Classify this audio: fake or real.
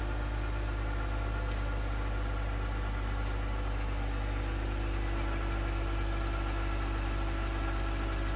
real